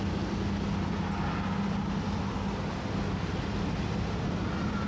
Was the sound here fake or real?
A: real